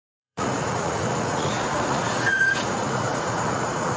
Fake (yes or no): yes